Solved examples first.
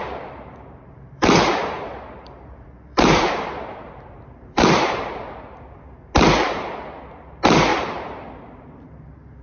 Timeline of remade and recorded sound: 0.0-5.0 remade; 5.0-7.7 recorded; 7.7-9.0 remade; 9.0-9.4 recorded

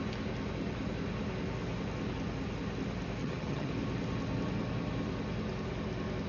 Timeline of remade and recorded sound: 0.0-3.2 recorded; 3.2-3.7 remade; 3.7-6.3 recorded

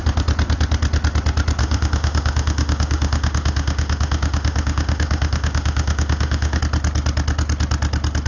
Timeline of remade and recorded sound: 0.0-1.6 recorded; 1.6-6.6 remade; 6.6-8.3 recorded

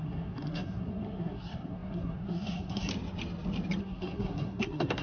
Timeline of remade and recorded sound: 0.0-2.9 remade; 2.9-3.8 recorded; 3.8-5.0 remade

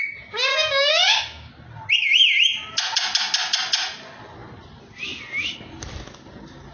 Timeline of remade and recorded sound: 0.0-0.5 recorded; 0.5-1.5 remade; 1.5-6.7 recorded

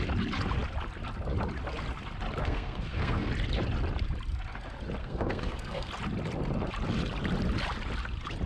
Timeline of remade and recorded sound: 0.0-2.4 recorded; 2.4-3.3 remade; 3.3-5.0 recorded; 5.0-5.9 remade; 5.9-8.5 recorded

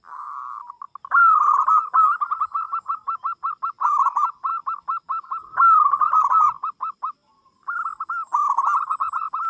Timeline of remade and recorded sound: 0.0-9.5 recorded

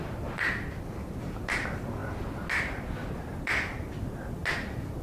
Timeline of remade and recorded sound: 0.0-5.0 recorded